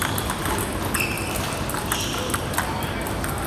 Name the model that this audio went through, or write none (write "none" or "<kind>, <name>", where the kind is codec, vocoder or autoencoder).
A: none